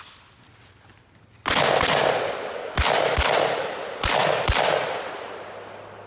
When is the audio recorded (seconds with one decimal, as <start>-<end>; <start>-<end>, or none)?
0.0-6.1